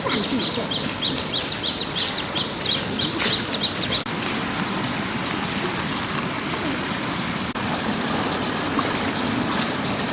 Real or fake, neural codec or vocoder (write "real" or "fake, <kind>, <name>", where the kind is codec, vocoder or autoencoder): real